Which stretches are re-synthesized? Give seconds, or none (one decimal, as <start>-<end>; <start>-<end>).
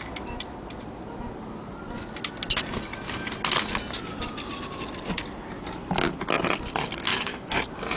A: 7.1-7.6